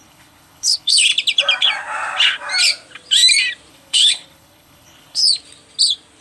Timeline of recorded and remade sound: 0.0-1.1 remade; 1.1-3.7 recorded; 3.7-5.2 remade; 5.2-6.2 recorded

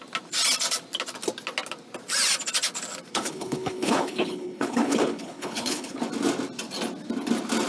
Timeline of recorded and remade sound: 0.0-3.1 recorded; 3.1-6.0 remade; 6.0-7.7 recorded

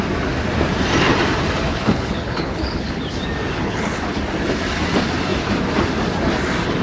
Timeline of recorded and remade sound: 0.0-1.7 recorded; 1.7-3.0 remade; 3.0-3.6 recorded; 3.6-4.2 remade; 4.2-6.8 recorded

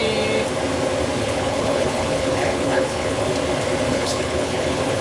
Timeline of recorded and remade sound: 0.0-1.2 recorded; 1.2-3.3 remade; 3.3-3.9 recorded; 3.9-5.0 remade

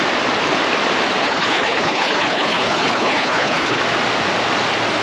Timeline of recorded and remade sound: 0.0-1.2 recorded; 1.2-3.8 remade; 3.8-5.0 recorded